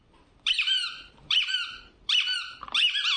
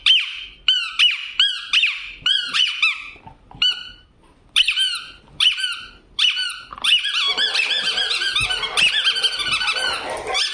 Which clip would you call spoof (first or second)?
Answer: first